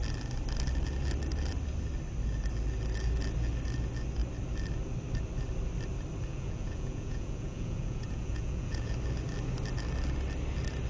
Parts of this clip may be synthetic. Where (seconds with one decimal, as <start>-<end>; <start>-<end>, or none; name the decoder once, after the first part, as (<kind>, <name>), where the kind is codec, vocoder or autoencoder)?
6.3-8.9 (vocoder, Vocos)